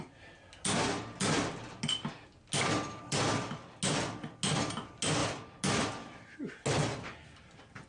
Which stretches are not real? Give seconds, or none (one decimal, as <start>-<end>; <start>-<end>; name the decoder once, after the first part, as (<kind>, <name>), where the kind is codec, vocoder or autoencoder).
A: none